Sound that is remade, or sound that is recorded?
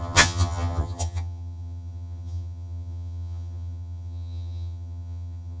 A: remade